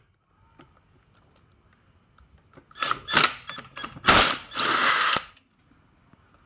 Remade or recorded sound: recorded